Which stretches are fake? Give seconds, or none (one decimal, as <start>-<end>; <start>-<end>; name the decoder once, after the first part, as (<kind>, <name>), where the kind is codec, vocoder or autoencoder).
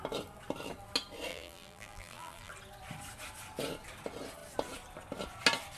1.3-2.5 (vocoder, BigVGAN v2)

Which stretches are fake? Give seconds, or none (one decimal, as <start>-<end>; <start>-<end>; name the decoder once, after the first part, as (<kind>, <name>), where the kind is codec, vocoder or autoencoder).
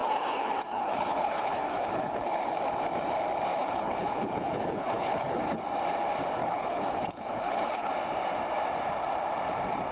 0.0-2.6 (codec, HILCodec); 3.6-5.6; 6.4-7.9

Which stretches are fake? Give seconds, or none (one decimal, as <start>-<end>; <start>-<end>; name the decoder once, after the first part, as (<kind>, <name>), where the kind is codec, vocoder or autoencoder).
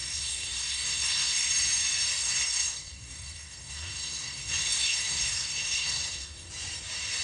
0.0-1.5 (codec, SNAC); 2.2-6.5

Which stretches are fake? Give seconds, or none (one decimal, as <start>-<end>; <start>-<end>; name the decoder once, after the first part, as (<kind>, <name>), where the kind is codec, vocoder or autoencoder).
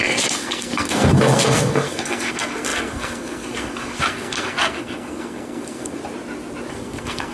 0.0-6.0 (codec, SNAC); 6.7-7.3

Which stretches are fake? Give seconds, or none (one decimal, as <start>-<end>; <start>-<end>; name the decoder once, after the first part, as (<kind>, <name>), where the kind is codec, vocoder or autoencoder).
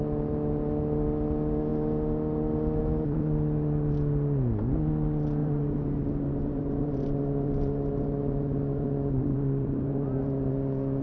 5.4-10.5 (vocoder, BigVGAN v2)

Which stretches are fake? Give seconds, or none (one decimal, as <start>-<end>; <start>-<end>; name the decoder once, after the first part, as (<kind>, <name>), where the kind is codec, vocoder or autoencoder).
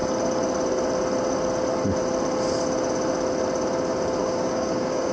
4.2-5.1 (codec, DAC)